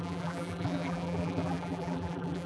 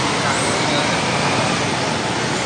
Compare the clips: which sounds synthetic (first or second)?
first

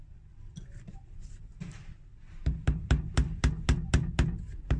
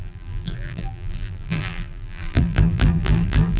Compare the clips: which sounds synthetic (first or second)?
second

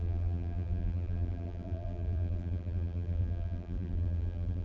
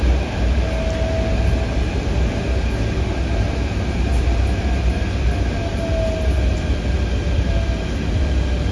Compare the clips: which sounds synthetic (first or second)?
first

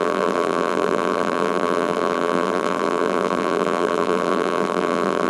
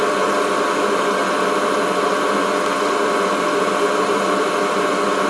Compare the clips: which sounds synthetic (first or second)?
first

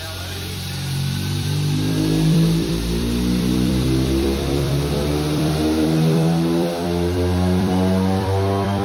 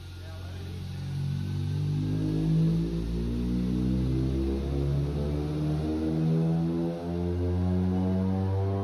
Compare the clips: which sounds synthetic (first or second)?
first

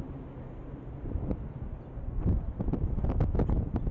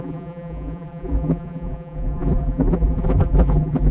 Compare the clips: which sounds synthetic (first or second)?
second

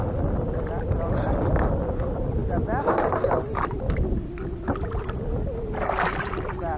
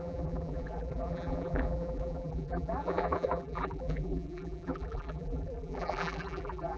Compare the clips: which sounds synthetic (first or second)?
second